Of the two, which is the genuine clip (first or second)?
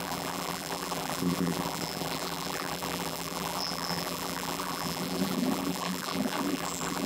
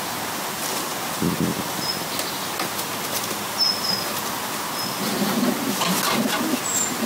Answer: second